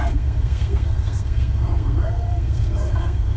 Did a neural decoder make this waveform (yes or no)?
yes